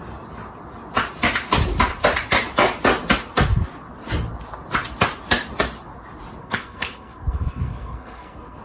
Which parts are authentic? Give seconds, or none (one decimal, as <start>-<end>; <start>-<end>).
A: 0.0-6.4